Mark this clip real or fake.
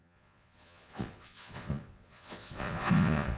fake